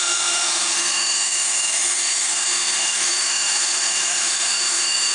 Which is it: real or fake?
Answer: fake